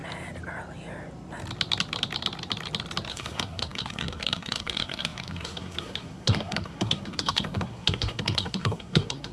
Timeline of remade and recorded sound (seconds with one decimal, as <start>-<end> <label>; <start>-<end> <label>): 0.0-3.1 recorded; 3.1-9.3 remade